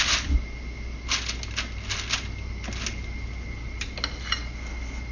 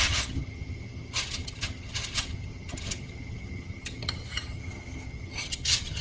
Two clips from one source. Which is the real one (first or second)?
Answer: first